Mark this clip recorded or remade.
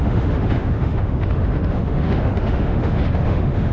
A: remade